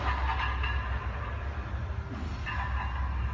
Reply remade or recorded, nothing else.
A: recorded